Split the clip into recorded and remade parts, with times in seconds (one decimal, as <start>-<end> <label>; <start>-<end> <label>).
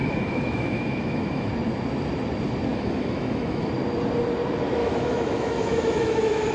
0.0-1.5 remade; 1.5-2.7 recorded; 2.7-3.7 remade; 3.7-4.8 recorded; 4.8-6.5 remade